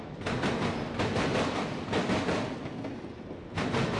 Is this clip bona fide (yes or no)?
yes